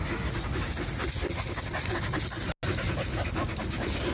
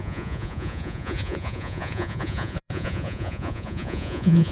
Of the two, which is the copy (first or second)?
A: second